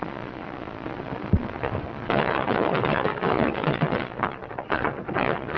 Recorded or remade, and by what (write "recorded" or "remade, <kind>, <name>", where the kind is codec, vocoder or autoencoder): remade, vocoder, Vocos